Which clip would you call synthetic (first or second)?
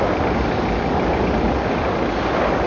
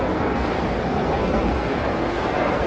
second